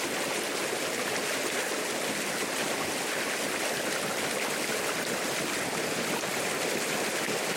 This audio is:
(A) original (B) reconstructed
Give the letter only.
A